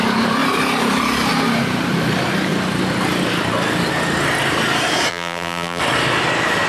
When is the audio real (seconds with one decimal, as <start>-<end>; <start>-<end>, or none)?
0.0-5.1; 5.8-6.7